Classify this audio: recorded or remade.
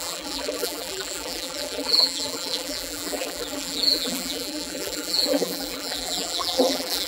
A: remade